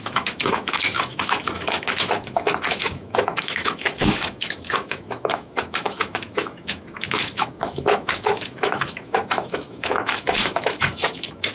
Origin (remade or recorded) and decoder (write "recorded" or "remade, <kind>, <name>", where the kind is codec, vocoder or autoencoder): remade, autoencoder, DAC-VAE